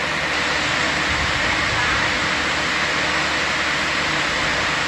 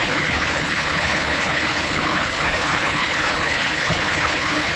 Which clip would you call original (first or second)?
first